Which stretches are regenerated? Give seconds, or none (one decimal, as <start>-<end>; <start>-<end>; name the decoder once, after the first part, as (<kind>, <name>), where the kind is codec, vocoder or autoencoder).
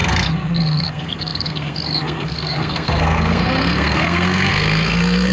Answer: 0.0-5.3 (codec, SNAC)